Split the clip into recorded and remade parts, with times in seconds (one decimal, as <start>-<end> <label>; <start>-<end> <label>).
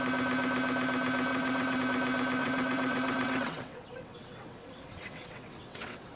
0.0-1.3 recorded; 1.3-1.8 remade; 1.8-2.4 recorded; 2.4-6.2 remade